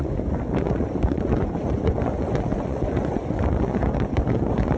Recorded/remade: remade